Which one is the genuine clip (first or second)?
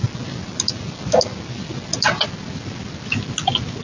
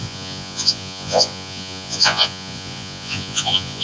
first